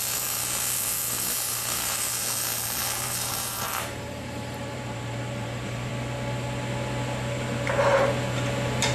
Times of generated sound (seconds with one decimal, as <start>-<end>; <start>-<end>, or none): 0.0-5.9